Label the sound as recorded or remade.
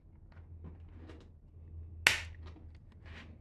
recorded